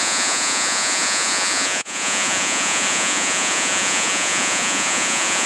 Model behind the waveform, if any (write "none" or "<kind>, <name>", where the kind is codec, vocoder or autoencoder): vocoder, Vocos